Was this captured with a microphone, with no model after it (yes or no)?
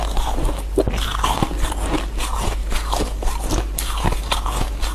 yes